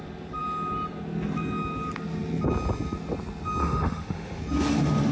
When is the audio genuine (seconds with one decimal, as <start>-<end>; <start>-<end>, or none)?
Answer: 0.0-3.6; 4.4-5.1